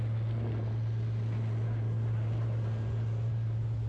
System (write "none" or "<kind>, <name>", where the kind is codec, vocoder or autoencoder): none